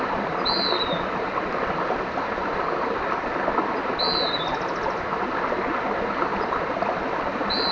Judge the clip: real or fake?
real